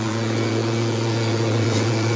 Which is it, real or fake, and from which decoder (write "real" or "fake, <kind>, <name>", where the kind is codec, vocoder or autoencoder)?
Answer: fake, vocoder, Vocos